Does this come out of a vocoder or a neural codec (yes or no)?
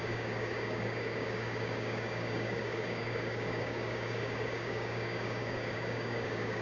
yes